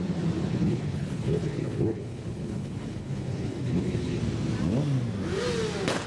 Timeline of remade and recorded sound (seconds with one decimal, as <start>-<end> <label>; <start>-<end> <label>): 0.0-0.5 recorded; 0.5-4.2 remade; 4.2-6.1 recorded